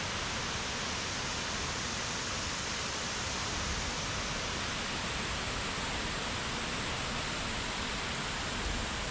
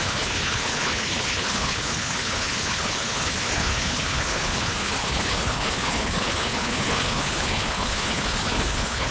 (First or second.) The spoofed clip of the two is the second